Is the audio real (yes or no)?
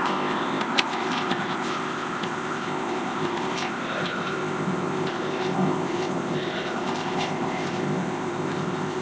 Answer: no